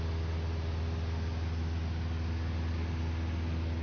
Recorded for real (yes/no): yes